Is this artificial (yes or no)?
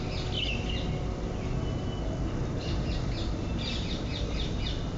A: no